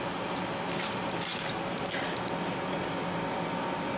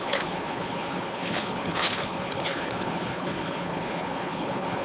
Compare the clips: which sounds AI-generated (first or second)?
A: second